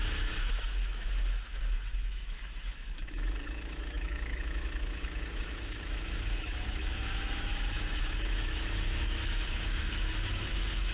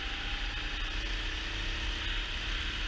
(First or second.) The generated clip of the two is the first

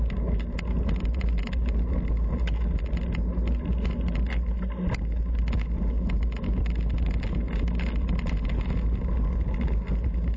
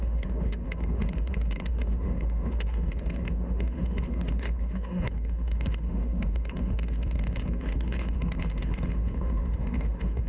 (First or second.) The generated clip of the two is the second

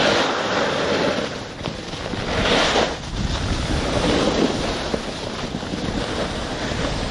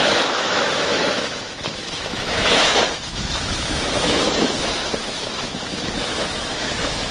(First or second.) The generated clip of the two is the second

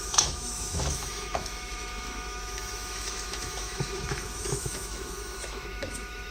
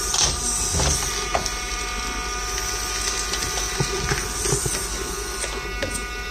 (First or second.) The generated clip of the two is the first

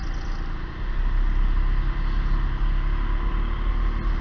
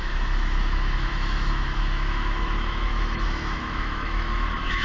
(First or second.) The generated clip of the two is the second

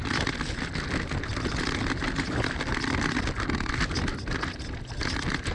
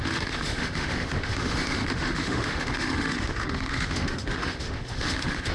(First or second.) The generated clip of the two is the second